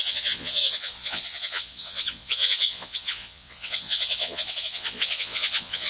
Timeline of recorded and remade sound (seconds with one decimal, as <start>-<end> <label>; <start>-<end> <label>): 0.0-5.9 remade